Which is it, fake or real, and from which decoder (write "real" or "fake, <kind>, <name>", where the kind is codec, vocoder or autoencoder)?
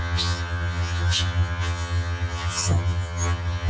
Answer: fake, vocoder, HiFi-GAN